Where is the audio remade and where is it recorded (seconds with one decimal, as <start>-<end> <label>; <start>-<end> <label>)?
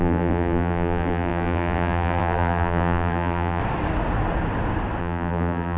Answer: 0.0-3.6 remade; 3.6-5.0 recorded; 5.0-5.8 remade